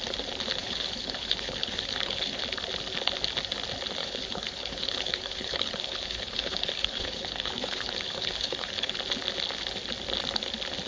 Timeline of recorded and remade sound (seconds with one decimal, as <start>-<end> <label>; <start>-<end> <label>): 0.0-0.6 recorded; 0.6-2.4 remade; 2.4-4.0 recorded; 4.0-8.9 remade; 8.9-10.9 recorded